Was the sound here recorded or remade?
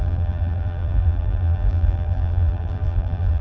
remade